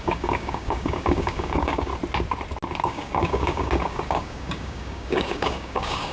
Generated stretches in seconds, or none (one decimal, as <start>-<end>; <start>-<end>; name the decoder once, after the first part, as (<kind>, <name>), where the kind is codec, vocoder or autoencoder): 0.0-1.9 (codec, DAC); 2.8-6.1